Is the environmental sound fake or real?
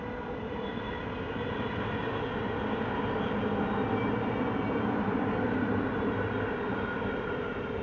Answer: real